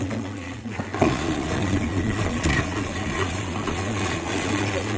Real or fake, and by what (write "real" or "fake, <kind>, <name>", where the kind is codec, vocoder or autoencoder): fake, vocoder, Vocos